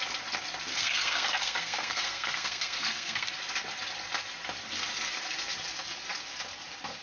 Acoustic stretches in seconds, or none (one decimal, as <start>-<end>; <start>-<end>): 0.0-0.7; 3.3-7.0